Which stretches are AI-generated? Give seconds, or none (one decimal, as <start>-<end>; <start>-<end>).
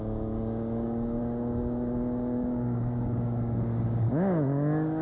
0.0-5.0